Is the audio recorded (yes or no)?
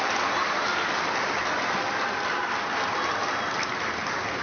yes